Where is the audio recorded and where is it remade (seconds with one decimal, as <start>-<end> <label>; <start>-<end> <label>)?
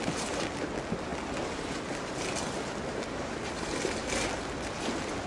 0.0-5.3 recorded